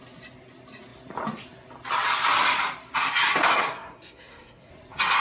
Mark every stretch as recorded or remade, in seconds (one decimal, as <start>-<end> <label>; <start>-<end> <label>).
0.0-3.5 recorded; 3.5-4.7 remade; 4.7-5.2 recorded